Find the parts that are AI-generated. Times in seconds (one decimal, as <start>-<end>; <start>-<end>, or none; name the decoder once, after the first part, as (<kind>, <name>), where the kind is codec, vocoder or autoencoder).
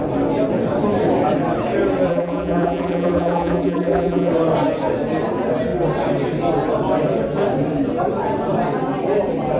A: 2.1-4.3 (vocoder, BigVGAN v2)